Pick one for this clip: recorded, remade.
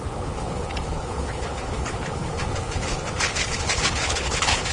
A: remade